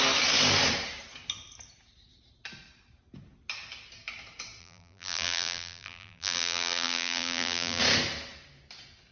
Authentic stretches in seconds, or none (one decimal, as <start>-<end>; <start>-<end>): 0.0-4.6; 7.8-9.1